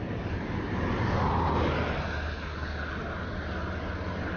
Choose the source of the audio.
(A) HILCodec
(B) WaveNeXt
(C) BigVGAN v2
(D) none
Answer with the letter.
D